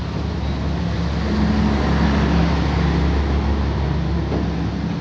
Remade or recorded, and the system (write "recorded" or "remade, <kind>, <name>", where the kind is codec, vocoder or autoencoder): recorded